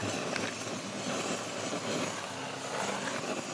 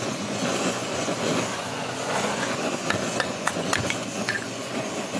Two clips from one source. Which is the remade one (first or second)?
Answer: second